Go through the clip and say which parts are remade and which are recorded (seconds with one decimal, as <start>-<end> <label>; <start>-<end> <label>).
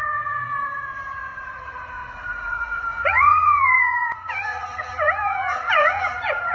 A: 0.0-6.5 remade